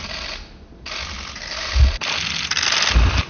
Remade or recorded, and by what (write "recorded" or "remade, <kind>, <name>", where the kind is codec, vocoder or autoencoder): recorded